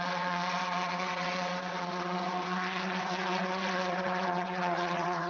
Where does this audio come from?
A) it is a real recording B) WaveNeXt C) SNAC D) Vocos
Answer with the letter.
B